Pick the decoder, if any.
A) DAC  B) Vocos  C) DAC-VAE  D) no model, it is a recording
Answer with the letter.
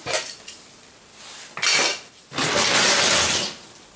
D